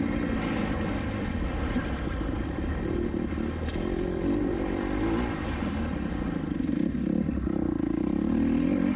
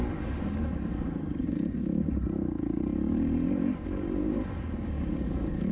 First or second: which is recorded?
first